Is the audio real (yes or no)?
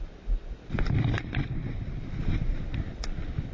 no